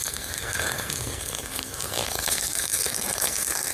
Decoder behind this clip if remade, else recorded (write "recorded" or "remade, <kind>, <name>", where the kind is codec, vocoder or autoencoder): remade, codec, SNAC